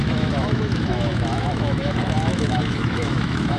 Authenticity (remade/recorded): remade